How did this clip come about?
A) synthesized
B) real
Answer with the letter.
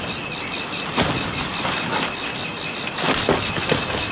B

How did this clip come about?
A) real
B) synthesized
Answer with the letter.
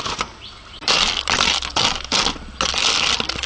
A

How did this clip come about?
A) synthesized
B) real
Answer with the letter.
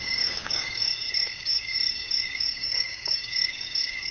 A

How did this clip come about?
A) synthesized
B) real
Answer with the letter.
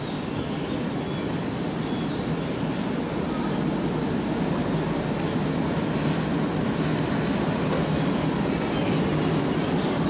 B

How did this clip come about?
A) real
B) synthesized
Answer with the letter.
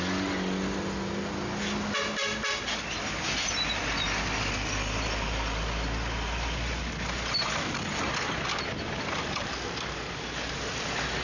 A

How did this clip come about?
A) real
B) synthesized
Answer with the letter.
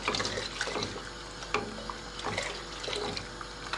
A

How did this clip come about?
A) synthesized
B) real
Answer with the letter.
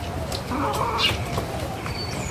B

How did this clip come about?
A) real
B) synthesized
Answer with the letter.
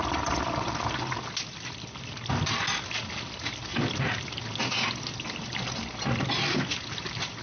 A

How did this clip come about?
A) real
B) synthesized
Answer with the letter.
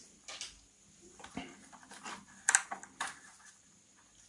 A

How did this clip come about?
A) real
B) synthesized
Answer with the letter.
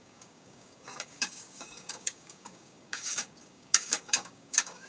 B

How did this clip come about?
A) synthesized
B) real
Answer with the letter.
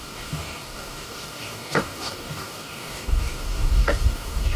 A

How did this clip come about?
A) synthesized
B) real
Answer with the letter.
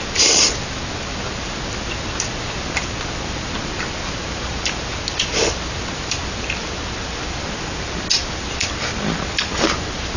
B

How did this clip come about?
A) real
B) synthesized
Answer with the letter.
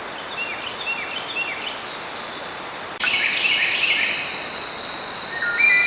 A